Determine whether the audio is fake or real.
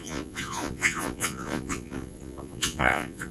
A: fake